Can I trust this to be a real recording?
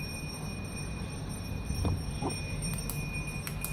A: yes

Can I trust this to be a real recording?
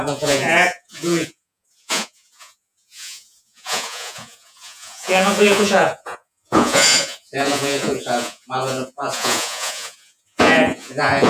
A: no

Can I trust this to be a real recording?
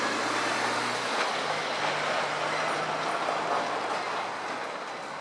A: yes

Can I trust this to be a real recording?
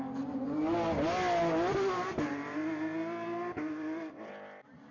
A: yes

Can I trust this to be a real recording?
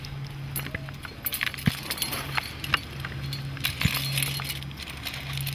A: yes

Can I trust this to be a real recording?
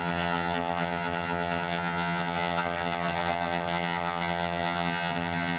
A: no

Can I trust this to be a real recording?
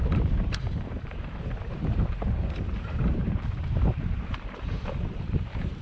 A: no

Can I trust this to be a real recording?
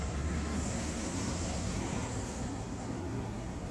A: no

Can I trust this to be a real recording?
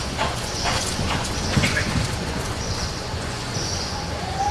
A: no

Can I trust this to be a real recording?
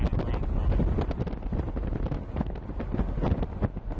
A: yes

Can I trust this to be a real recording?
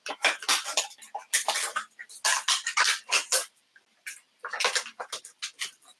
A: yes